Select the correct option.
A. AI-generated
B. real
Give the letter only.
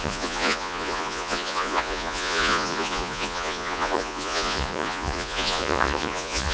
A